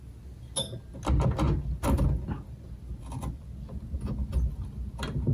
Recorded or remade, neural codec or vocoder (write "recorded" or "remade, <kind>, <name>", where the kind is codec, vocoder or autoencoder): recorded